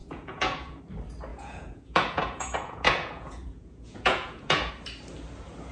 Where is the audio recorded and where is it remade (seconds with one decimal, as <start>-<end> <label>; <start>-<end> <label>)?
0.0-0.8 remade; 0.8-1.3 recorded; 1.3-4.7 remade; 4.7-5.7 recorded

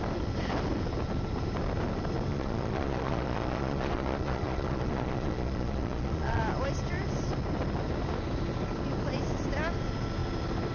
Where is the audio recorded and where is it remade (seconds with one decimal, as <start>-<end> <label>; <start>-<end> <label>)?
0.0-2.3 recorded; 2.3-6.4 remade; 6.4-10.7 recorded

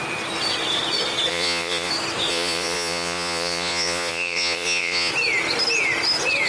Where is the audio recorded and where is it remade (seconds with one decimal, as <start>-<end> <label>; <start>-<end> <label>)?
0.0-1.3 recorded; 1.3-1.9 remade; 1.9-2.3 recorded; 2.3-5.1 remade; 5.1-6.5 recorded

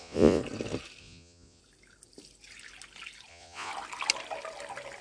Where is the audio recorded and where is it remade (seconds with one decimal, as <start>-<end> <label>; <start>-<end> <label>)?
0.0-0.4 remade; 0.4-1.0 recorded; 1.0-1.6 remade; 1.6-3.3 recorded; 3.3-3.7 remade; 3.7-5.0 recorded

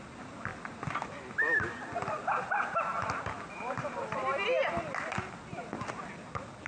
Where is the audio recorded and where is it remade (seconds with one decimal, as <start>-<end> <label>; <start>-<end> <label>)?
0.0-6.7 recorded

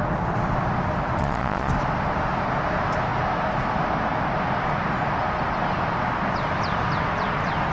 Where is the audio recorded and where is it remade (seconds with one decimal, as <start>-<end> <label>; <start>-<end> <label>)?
0.0-1.2 recorded; 1.2-1.7 remade; 1.7-7.7 recorded